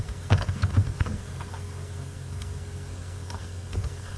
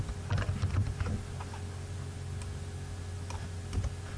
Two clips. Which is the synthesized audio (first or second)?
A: first